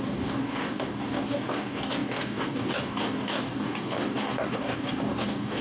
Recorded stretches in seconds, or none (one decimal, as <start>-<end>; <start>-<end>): none